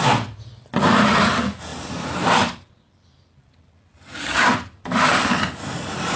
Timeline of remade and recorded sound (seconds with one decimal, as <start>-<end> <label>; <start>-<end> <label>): 0.0-1.7 recorded; 1.7-5.4 remade; 5.4-6.2 recorded